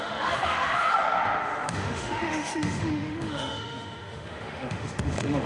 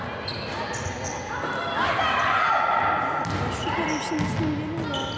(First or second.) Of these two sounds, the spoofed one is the first